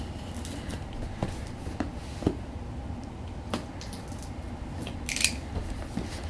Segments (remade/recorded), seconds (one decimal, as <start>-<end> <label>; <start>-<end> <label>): 0.0-6.3 recorded